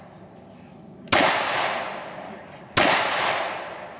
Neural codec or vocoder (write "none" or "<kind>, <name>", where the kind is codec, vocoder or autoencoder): none